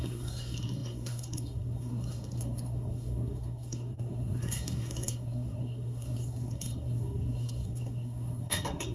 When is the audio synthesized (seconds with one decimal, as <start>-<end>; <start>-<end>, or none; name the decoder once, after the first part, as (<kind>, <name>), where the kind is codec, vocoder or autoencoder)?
0.0-8.9 (codec, SNAC)